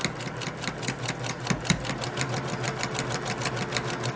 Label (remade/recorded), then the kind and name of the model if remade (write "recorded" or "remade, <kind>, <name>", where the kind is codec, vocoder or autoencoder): recorded